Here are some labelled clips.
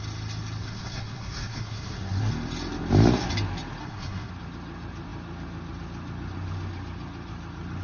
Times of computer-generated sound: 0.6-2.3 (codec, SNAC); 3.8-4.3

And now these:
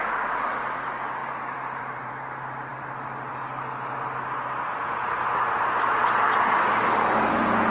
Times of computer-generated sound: 1.2-2.1 (vocoder, BigVGAN v2)

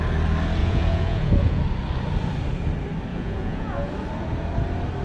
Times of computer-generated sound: 0.6-1.6 (vocoder, Vocos); 3.1-3.9

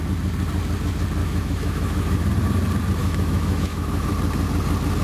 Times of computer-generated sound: 1.2-2.3 (autoencoder, DAC-VAE); 3.0-4.1

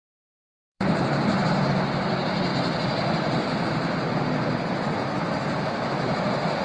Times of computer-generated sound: 0.6-1.7 (vocoder, BigVGAN v2); 2.5-6.6